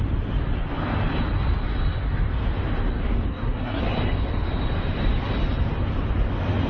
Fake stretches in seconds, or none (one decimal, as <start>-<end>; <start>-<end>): 3.3-3.8